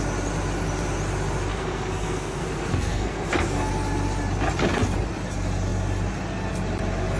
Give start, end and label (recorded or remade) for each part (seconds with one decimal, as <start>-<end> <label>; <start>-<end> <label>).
0.0-1.5 recorded; 1.5-3.7 remade; 3.7-7.2 recorded